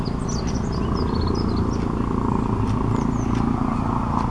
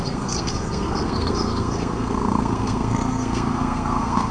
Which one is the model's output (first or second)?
second